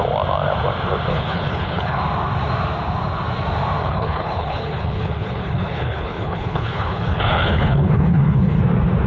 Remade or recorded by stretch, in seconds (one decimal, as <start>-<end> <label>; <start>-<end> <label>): 0.0-1.1 recorded; 1.1-2.0 remade; 2.0-3.8 recorded; 3.8-8.6 remade; 8.6-9.1 recorded